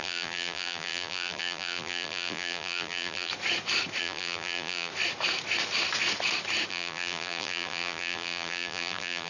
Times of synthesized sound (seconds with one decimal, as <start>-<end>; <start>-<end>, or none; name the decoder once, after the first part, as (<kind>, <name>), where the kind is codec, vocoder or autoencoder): 0.0-3.3 (vocoder, BigVGAN v2); 4.0-4.9; 6.7-9.3